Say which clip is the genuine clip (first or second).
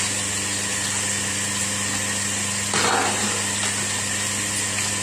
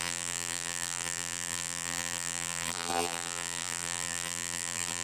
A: first